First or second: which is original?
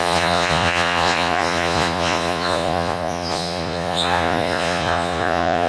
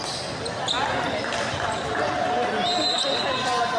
second